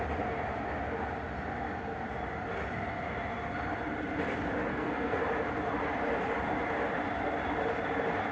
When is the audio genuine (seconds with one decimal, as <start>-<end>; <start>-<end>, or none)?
0.0-4.7; 5.2-8.3